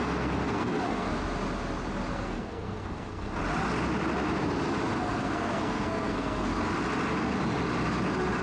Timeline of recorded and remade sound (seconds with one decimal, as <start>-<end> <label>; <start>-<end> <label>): 0.0-1.1 remade; 1.1-2.1 recorded; 2.1-3.4 remade; 3.4-5.0 recorded; 5.0-6.5 remade; 6.5-8.4 recorded